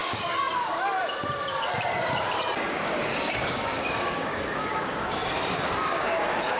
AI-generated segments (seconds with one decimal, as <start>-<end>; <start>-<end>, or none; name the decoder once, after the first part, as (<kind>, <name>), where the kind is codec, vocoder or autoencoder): 0.0-0.9 (codec, DAC); 2.7-6.6